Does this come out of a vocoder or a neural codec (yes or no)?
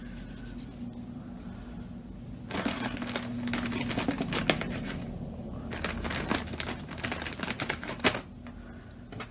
no